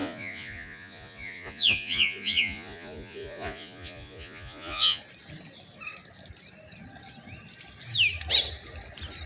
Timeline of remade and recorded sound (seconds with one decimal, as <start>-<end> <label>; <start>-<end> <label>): 0.0-5.0 remade; 5.0-9.3 recorded